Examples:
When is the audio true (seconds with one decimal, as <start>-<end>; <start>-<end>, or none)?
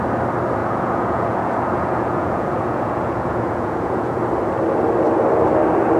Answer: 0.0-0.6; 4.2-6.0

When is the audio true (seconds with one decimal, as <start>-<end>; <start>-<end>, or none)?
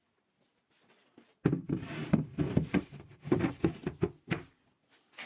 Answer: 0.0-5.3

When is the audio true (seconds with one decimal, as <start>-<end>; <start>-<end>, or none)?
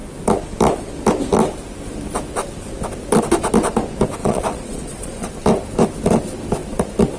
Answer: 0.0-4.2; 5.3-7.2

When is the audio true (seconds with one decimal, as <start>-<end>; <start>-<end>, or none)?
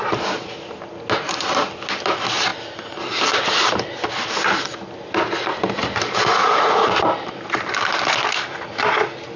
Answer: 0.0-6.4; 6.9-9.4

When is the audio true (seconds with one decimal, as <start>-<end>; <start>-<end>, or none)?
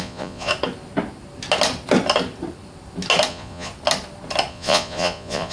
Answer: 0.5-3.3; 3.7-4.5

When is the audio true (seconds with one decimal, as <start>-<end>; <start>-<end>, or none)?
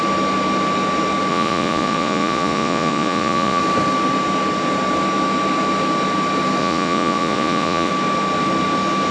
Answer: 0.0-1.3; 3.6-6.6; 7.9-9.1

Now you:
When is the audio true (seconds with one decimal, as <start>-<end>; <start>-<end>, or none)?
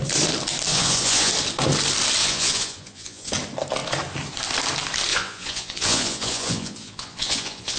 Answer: 0.0-0.7; 1.3-2.2; 3.3-5.1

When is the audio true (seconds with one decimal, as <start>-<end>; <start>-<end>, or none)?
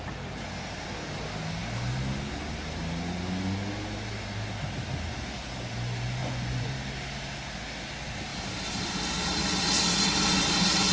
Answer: 0.0-6.2; 6.7-10.9